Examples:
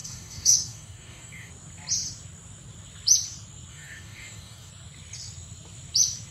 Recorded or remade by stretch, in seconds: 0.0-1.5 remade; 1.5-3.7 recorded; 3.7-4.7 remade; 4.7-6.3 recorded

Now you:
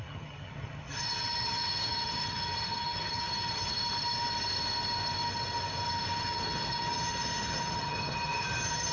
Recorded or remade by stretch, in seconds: 0.0-3.8 remade; 3.8-6.2 recorded; 6.2-8.9 remade

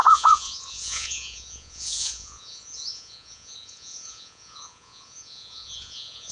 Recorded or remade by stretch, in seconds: 0.0-6.3 remade

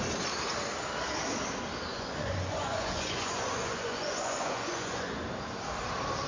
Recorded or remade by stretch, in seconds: 0.0-1.9 recorded; 1.9-5.2 remade; 5.2-6.3 recorded

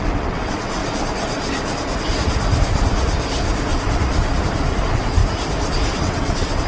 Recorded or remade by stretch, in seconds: 0.0-0.8 remade; 0.8-4.8 recorded; 4.8-5.2 remade; 5.2-6.0 recorded; 6.0-6.7 remade

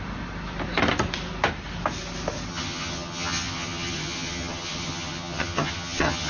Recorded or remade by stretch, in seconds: 0.0-2.5 recorded; 2.5-6.3 remade